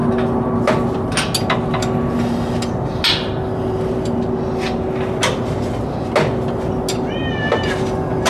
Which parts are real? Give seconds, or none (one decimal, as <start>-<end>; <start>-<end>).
0.0-8.3